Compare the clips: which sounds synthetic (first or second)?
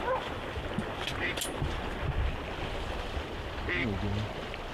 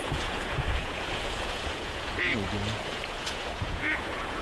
second